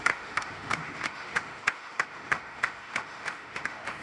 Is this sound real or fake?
fake